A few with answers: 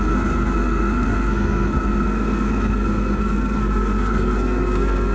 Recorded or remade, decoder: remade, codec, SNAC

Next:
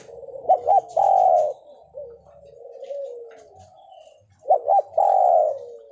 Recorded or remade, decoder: recorded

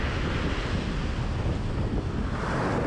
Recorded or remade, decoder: recorded